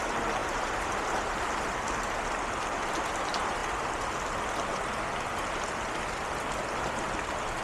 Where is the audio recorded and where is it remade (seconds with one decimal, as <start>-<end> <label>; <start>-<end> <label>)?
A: 0.0-0.4 recorded; 0.4-2.2 remade; 2.2-7.6 recorded